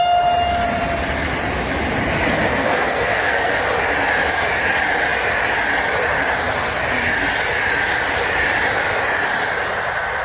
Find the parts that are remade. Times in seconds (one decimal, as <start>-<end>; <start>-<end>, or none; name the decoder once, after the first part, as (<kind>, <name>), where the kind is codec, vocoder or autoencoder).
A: 2.5-3.5 (codec, SNAC)